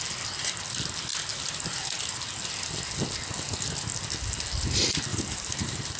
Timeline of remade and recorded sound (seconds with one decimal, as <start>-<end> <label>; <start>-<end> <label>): 0.0-5.1 recorded; 5.1-6.0 remade